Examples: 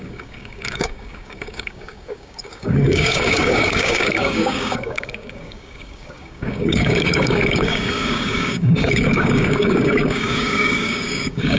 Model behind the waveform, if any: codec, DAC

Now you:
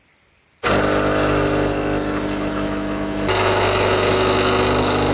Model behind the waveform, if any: none